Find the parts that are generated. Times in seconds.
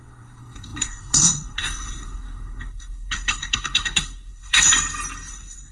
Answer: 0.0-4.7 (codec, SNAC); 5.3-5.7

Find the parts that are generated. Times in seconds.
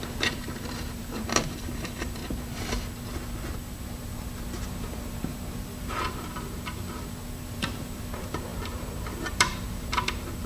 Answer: 0.0-2.2 (vocoder, BigVGAN v2); 4.0-10.5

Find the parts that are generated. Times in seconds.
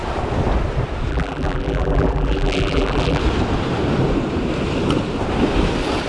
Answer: 1.1-3.2 (vocoder, BigVGAN v2)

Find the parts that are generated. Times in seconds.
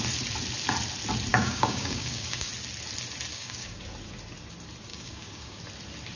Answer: 1.3-2.5 (codec, DAC); 3.3-3.8; 4.9-5.6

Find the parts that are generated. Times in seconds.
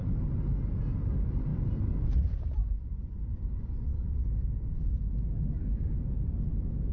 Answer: none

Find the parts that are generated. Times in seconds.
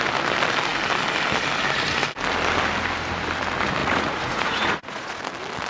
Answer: 3.8-5.2 (vocoder, Vocos)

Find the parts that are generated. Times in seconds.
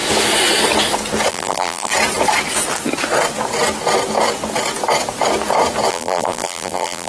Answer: 1.3-1.9 (vocoder, BigVGAN v2); 5.9-7.1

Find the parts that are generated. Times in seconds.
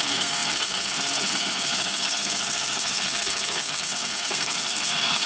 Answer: 0.0-5.3 (codec, SNAC)